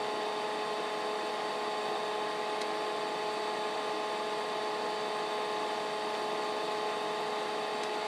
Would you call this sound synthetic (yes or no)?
no